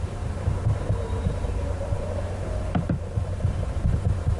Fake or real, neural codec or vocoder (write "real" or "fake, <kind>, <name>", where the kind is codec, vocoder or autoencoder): fake, vocoder, BigVGAN v2